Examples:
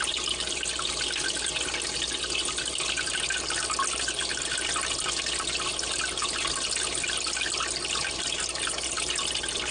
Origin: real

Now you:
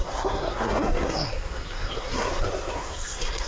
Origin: fake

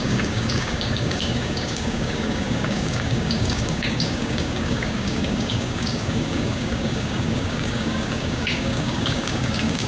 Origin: fake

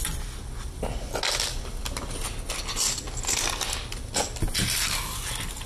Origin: real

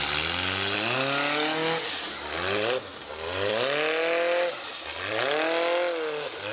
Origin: real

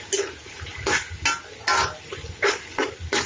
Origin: real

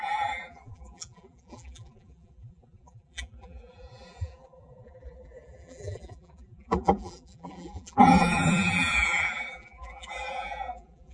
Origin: fake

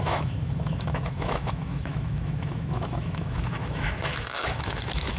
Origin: fake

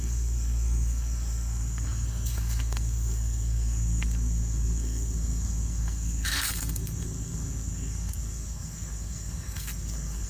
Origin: fake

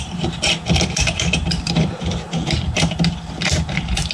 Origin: fake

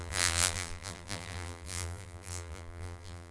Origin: fake